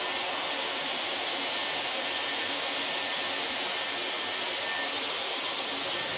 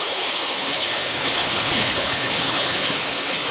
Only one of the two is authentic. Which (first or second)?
first